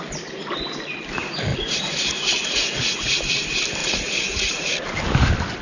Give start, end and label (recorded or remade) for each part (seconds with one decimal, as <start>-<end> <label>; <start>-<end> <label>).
0.0-1.5 recorded; 1.5-3.2 remade; 3.2-3.8 recorded; 3.8-4.7 remade; 4.7-5.6 recorded